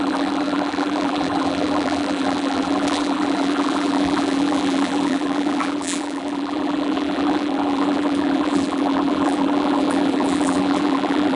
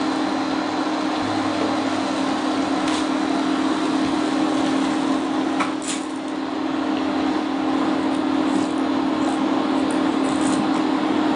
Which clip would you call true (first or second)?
second